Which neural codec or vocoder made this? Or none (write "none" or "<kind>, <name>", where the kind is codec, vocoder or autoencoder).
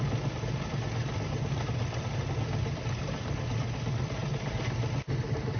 none